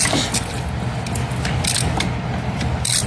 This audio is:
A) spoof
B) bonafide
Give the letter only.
B